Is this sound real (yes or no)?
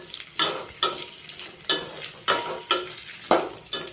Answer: yes